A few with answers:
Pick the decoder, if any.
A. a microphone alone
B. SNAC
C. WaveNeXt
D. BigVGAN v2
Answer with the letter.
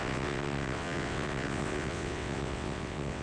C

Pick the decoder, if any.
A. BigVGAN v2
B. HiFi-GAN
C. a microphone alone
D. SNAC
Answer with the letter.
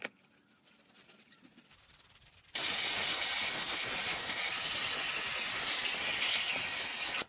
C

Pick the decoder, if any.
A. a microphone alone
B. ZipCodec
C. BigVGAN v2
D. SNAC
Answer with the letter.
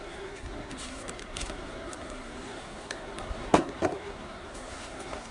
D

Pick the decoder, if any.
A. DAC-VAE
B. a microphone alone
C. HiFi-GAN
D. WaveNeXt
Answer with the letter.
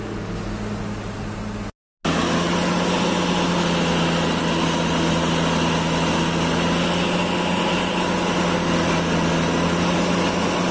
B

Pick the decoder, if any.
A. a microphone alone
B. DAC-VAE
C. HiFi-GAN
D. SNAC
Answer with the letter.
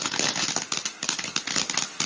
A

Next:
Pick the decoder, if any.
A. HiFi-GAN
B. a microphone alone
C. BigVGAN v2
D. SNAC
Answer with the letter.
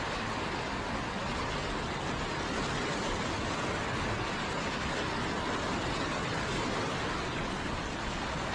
B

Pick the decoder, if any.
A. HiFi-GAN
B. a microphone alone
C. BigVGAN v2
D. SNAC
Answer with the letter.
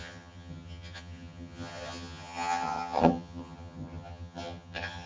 A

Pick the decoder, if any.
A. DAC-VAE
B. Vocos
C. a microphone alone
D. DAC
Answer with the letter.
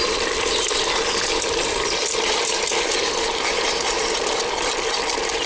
C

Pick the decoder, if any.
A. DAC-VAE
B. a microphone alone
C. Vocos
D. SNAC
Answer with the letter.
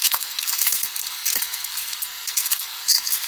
D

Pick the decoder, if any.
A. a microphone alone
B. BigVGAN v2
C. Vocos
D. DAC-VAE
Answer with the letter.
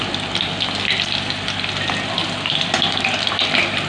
A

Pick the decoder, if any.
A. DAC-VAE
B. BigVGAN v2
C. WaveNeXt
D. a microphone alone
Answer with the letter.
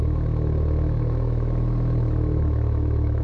A